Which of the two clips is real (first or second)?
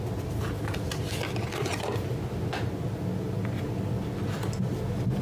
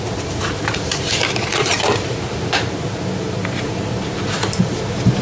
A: first